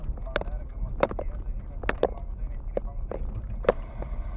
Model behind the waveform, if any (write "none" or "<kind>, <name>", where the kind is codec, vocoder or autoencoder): none